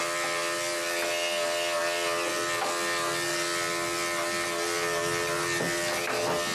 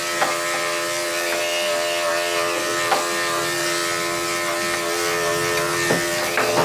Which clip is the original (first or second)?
first